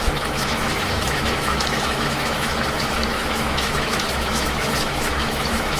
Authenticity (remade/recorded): remade